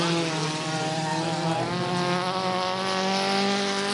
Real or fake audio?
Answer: real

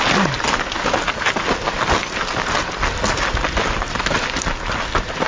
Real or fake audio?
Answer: real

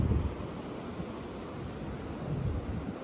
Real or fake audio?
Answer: real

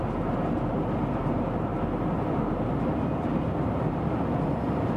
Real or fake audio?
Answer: real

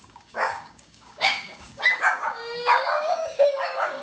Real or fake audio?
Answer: fake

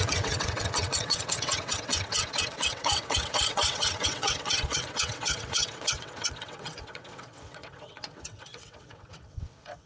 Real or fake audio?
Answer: fake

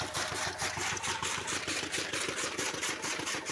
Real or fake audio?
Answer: fake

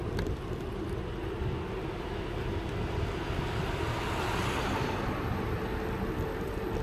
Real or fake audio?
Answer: real